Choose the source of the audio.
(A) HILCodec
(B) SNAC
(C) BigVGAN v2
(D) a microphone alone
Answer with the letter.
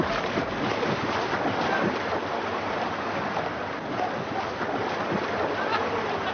D